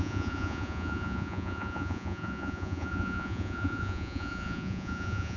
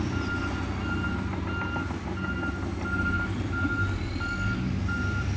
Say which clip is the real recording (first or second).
second